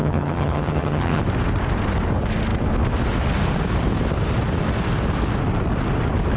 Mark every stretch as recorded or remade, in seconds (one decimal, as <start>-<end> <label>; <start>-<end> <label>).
0.0-1.2 remade; 1.2-6.4 recorded